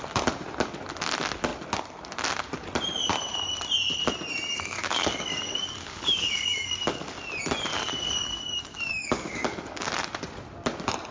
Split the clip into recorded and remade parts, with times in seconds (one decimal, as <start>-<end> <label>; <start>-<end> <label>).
0.0-4.5 recorded; 4.5-7.1 remade; 7.1-7.7 recorded; 7.7-9.9 remade; 9.9-11.1 recorded